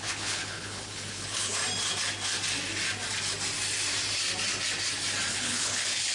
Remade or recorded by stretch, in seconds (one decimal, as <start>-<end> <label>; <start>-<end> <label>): 0.0-1.6 remade; 1.6-5.3 recorded; 5.3-6.1 remade